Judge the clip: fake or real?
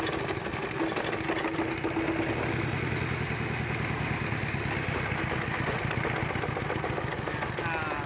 real